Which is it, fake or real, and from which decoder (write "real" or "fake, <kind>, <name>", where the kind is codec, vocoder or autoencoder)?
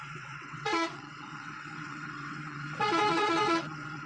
fake, vocoder, WaveNeXt